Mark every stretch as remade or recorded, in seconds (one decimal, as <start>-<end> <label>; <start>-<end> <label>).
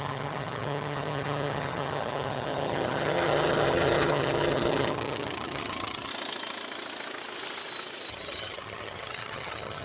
0.0-6.1 remade; 6.1-8.1 recorded; 8.1-9.8 remade